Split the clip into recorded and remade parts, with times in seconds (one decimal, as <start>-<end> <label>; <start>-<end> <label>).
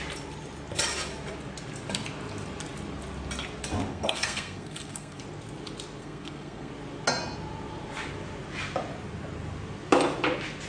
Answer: 0.0-3.9 recorded; 3.9-5.2 remade; 5.2-6.0 recorded; 6.0-6.7 remade; 6.7-10.7 recorded